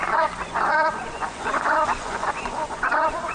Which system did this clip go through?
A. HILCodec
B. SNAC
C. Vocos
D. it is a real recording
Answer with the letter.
C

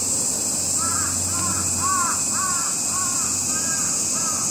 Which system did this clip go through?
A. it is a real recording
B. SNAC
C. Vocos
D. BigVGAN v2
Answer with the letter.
A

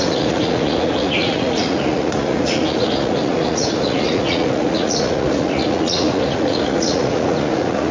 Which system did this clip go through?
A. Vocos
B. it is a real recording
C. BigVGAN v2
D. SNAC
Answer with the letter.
A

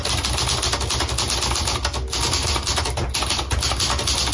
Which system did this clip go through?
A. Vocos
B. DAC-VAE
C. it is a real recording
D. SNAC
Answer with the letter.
C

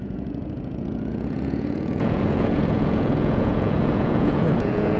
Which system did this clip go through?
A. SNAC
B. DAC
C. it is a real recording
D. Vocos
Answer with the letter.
D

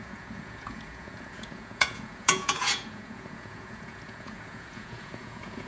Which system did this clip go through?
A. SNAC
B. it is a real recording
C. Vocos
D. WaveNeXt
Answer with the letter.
C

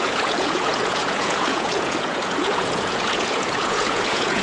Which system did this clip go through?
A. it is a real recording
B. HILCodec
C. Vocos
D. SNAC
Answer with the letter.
C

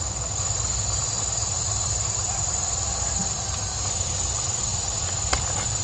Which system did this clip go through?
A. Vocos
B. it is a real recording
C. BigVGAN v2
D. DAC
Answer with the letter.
B